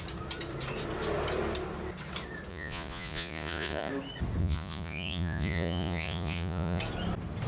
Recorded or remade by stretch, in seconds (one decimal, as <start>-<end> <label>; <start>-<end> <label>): 0.0-2.5 recorded; 2.5-3.9 remade; 3.9-4.4 recorded; 4.4-6.8 remade; 6.8-7.5 recorded